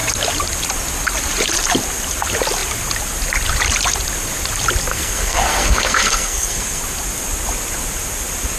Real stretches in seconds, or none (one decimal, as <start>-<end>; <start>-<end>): 0.0-4.9; 6.8-8.6